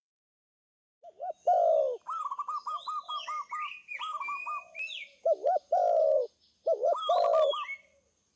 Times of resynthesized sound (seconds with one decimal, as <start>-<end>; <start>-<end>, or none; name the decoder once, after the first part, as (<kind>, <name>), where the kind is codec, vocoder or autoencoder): 7.5-8.4 (vocoder, BigVGAN v2)